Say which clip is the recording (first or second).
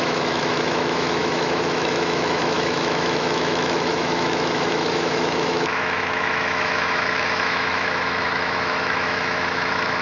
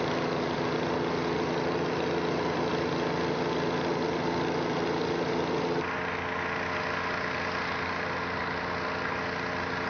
second